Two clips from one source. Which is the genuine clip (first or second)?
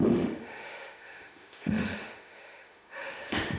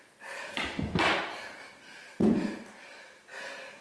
second